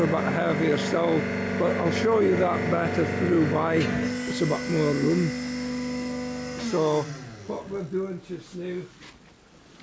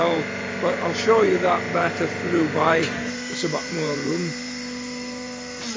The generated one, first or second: second